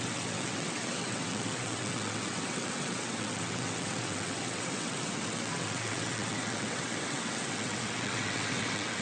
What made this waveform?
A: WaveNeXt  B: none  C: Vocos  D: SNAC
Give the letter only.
A